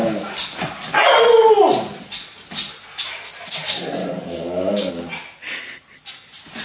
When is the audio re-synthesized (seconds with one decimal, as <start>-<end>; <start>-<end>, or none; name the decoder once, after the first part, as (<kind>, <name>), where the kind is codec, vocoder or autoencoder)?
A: 4.0-4.9 (codec, DAC)